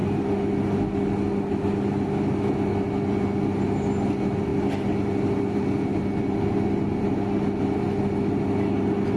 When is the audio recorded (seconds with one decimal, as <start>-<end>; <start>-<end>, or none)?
0.0-9.2